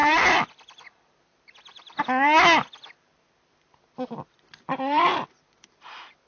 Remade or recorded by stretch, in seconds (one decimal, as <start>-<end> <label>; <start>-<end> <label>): 0.0-2.0 remade; 2.0-2.8 recorded; 2.8-5.8 remade; 5.8-6.3 recorded